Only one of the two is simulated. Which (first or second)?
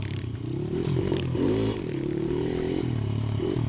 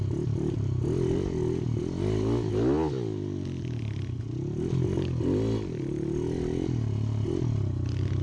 first